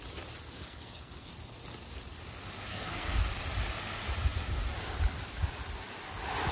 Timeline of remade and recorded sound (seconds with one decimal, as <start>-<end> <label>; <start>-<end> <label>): 0.0-0.6 recorded; 0.6-1.3 remade; 1.3-2.7 recorded; 2.7-3.2 remade; 3.2-6.5 recorded